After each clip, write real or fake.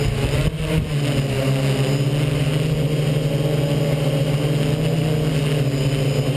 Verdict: real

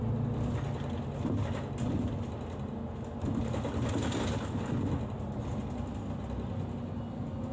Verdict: real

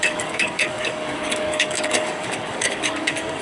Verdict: fake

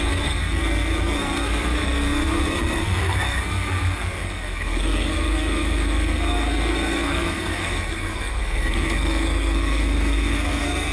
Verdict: fake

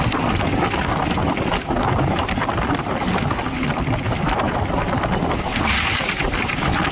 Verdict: fake